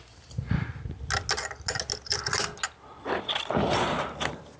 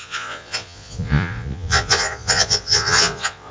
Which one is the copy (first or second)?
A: second